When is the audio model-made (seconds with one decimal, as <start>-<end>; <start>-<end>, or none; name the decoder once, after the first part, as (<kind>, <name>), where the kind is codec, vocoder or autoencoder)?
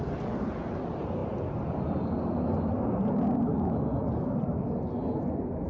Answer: none